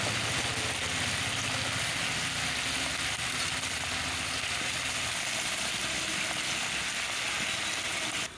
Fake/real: real